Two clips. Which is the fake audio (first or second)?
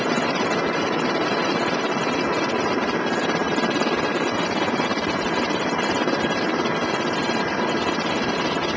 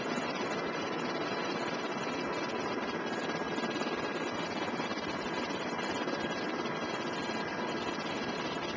first